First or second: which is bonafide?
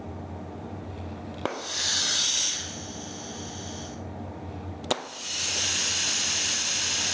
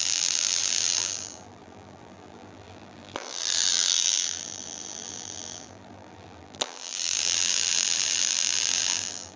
first